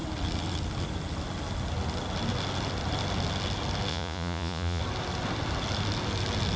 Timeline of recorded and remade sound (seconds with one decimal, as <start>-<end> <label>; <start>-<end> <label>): 0.0-3.9 recorded; 3.9-4.8 remade; 4.8-6.6 recorded